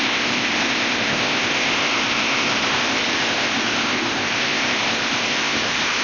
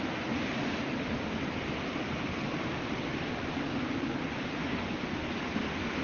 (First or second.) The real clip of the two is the second